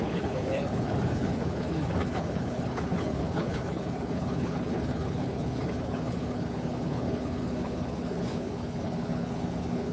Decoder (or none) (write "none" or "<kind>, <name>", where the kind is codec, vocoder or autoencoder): codec, HILCodec